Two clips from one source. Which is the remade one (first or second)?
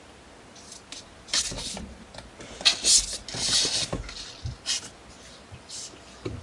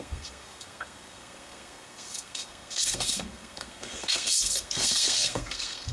second